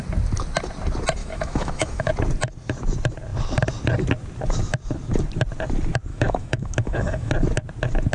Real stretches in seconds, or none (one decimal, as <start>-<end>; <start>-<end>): 0.0-1.2; 2.1-6.1; 7.3-8.1